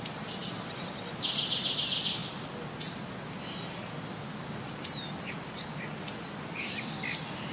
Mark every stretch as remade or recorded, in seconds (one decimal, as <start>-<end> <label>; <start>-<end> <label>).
0.0-7.5 recorded